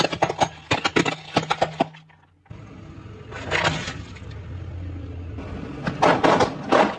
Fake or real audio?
real